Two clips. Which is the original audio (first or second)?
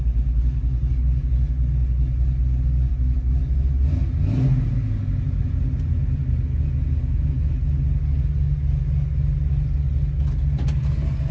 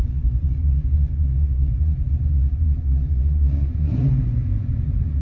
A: first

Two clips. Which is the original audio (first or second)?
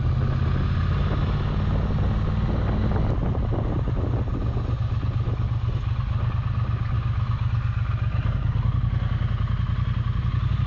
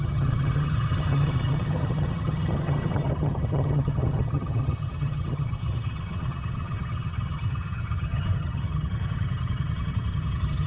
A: first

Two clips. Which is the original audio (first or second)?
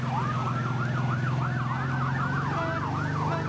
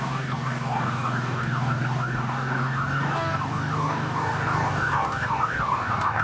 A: first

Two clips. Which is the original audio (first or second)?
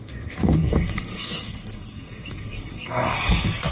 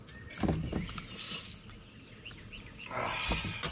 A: second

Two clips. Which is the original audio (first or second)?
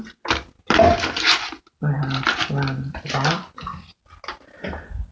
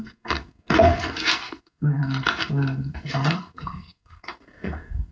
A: first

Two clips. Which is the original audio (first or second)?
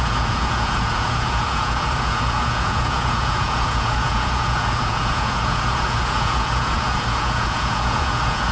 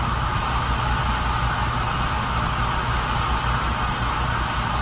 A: second